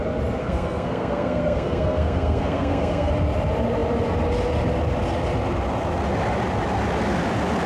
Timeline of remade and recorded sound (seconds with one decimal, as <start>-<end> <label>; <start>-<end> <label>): 0.0-0.4 recorded; 0.4-3.1 remade; 3.1-7.7 recorded